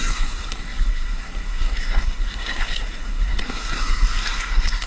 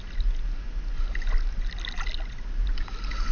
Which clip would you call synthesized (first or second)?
first